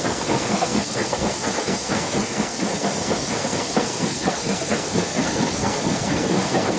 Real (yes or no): no